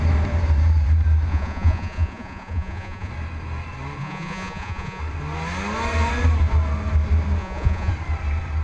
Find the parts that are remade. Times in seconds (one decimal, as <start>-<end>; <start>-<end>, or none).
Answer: 1.3-3.1; 4.0-5.0; 7.4-7.9